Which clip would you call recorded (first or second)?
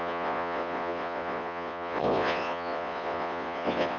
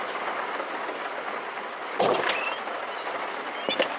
second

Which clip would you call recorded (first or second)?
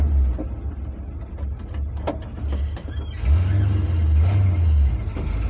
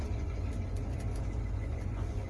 first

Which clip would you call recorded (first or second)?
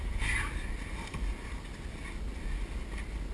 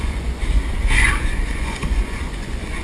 first